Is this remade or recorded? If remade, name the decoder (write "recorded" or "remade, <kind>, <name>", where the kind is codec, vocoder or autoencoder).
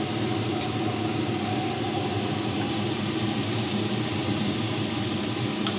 recorded